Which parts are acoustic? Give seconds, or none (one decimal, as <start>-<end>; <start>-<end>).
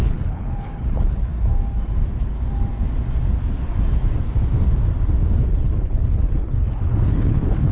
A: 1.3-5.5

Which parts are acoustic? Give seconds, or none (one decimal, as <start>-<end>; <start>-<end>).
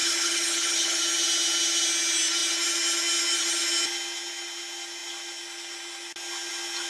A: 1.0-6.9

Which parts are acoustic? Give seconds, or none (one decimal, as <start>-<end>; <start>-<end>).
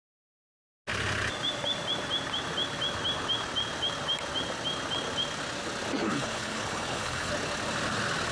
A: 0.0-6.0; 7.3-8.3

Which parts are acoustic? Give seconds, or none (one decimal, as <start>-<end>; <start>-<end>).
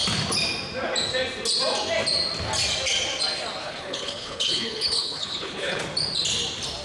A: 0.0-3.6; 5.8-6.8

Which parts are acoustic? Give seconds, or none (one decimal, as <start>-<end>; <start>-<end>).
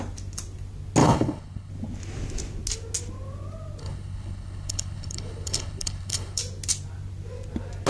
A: 0.0-1.0; 1.7-3.8; 6.4-7.9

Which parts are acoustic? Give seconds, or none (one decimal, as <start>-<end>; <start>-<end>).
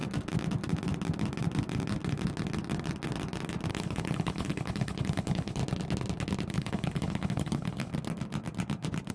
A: 0.0-3.7; 5.6-6.5; 7.9-9.1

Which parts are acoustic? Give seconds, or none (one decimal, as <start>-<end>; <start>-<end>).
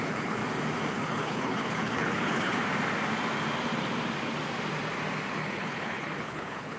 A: 0.4-0.9; 2.6-5.3